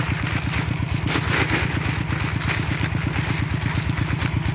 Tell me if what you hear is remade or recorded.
recorded